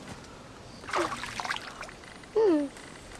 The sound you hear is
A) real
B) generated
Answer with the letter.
A